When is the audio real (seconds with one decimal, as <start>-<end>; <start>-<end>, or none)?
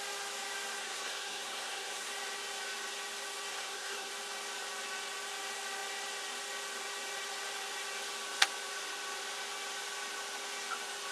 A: 0.0-0.8; 2.1-3.5; 4.1-11.1